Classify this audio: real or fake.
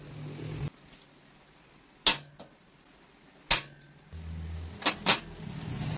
real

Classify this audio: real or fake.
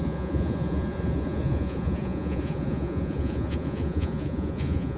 fake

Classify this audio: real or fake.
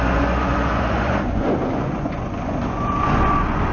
fake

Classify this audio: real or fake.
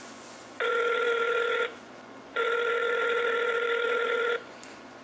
fake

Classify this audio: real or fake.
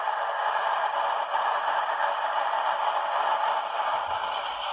real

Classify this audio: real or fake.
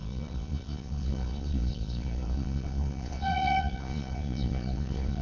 fake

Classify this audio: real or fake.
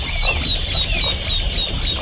real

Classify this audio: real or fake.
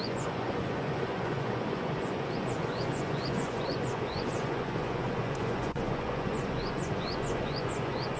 fake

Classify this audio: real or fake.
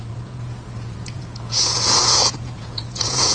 fake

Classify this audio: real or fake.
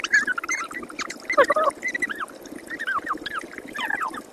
real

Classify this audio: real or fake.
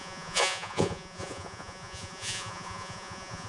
fake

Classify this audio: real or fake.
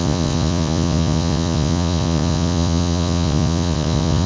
fake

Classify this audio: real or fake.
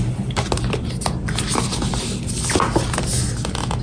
real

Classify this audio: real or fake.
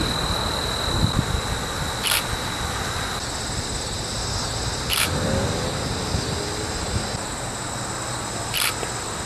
real